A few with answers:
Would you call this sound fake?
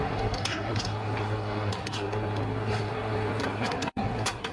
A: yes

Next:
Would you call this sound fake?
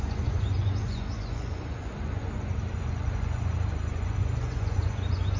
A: yes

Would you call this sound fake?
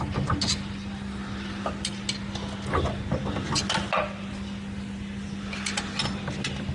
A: no